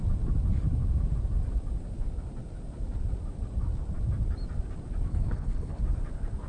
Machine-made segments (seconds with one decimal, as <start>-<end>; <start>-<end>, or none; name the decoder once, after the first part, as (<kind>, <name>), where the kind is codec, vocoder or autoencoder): 5.1-5.8 (codec, HILCodec)